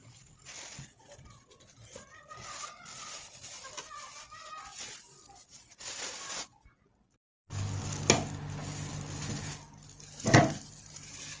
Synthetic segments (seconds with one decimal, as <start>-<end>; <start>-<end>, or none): none